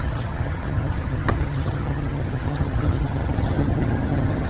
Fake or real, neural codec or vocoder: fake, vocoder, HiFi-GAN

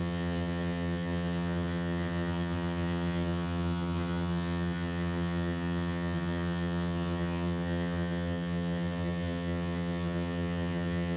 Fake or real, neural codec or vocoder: fake, vocoder, HiFi-GAN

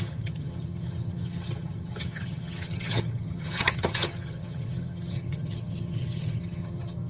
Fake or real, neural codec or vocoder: fake, vocoder, HiFi-GAN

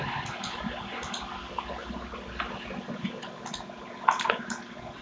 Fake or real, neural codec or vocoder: real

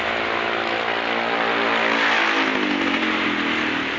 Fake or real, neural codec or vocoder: real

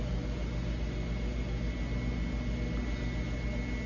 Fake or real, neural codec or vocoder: real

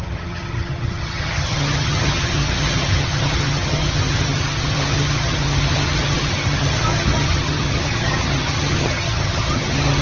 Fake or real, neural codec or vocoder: fake, vocoder, HiFi-GAN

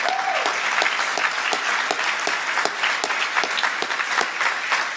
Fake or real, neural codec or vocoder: real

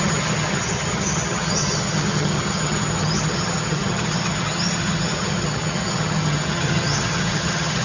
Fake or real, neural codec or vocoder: fake, vocoder, HiFi-GAN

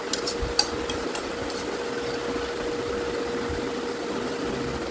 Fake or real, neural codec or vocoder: real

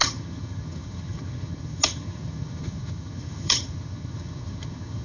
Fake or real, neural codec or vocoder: fake, vocoder, HiFi-GAN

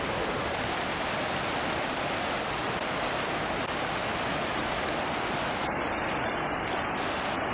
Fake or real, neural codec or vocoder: real